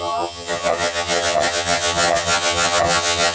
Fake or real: fake